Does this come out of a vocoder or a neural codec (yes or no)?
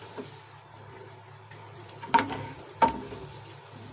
no